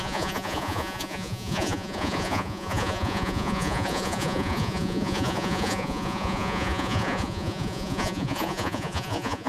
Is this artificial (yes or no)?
yes